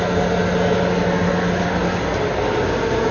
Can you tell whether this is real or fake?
real